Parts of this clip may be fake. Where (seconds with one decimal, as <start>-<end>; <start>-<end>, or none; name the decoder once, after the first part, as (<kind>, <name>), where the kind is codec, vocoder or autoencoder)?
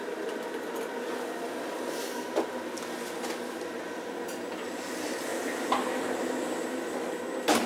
none